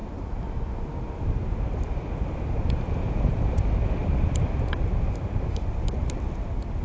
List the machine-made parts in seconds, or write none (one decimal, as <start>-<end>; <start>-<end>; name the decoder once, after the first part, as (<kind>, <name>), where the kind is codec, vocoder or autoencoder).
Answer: none